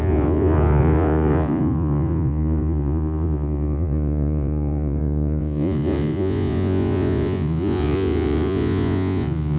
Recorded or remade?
remade